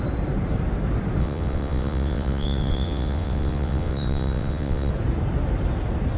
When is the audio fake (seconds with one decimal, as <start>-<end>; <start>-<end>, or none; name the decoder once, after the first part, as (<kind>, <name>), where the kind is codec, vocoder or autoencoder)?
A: 1.2-4.9 (vocoder, WaveNeXt)